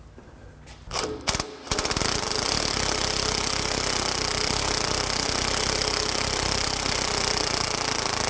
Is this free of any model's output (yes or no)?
yes